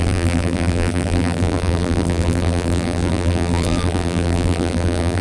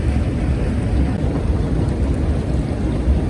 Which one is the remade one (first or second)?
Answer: first